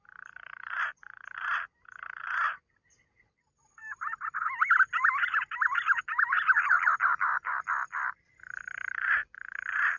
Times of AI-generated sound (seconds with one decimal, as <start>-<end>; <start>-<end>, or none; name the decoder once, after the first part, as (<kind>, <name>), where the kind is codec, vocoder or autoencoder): none